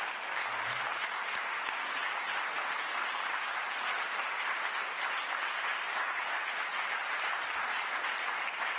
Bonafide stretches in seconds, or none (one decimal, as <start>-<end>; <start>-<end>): 0.0-5.7; 6.6-8.8

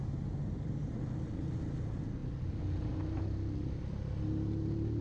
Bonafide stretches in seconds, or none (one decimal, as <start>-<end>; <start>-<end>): 0.9-5.0

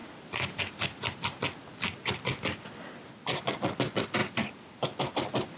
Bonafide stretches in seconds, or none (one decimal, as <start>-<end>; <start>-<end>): 0.6-4.2; 4.8-5.6

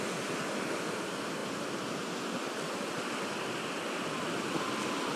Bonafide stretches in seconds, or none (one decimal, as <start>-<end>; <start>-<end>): 0.0-5.2

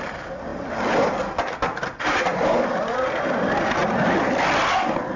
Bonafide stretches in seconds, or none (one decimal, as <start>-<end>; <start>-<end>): 0.0-2.7; 3.4-3.8; 4.4-5.2

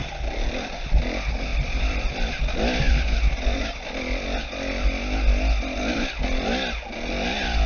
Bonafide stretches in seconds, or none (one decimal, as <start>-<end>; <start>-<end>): 0.0-1.5; 2.3-7.7